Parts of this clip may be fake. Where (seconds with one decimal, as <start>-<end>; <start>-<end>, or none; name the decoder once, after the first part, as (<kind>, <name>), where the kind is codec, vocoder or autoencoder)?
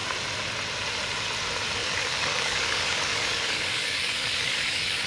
1.8-5.1 (codec, DAC)